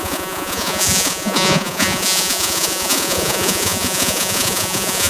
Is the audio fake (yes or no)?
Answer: yes